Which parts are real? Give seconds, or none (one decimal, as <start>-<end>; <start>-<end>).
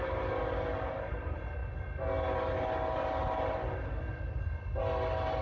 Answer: 0.0-5.4